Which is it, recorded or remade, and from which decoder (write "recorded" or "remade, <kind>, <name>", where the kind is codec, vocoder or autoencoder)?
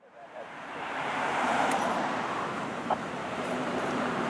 remade, vocoder, BigVGAN v2